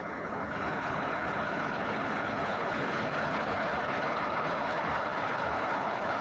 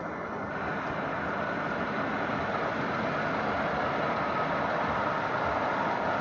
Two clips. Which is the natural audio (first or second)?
second